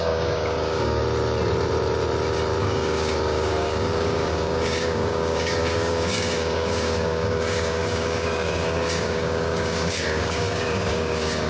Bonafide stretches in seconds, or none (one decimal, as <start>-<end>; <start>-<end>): 1.0-2.6